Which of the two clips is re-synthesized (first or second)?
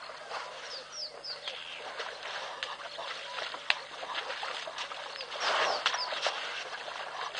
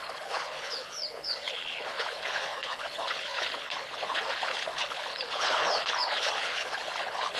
second